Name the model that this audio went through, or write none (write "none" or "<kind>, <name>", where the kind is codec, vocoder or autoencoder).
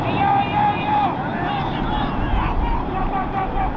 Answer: vocoder, BigVGAN v2